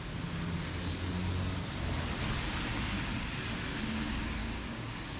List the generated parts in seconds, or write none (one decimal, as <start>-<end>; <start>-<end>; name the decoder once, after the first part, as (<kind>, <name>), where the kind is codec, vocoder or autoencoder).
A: 4.4-5.2 (codec, DAC)